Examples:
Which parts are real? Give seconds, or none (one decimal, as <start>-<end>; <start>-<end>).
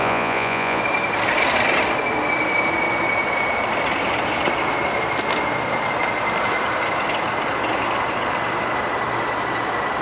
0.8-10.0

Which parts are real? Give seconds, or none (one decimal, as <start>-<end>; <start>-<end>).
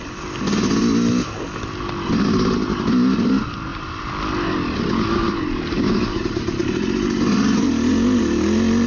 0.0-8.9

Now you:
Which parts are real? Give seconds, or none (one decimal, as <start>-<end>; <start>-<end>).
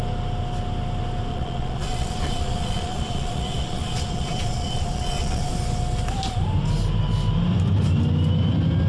0.0-1.3; 5.5-8.9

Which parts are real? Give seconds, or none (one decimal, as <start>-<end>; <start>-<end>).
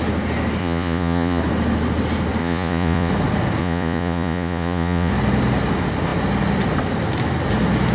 0.0-0.6; 1.4-2.4; 3.1-3.6; 5.1-7.9